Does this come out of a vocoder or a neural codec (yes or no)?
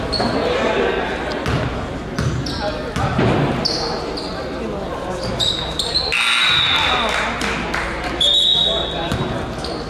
no